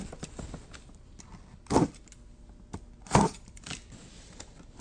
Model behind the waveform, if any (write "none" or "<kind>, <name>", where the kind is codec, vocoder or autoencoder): none